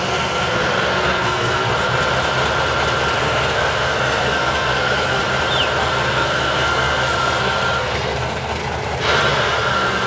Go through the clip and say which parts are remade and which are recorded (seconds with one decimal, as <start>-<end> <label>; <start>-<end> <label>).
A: 0.0-1.7 remade; 1.7-3.2 recorded; 3.2-5.2 remade; 5.2-5.8 recorded; 5.8-8.6 remade; 8.6-9.3 recorded; 9.3-10.1 remade